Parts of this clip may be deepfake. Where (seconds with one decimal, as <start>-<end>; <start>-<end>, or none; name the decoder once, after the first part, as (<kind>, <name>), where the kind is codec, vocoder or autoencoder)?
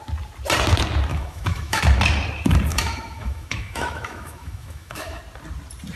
1.1-1.8 (autoencoder, DAC-VAE); 2.7-5.2